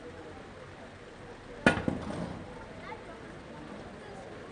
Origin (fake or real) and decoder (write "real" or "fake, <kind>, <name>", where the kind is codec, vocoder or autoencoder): real